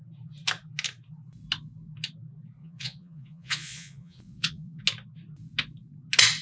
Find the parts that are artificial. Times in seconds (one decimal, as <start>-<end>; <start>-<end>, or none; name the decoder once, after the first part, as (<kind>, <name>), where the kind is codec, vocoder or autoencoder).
2.6-4.8 (vocoder, Vocos)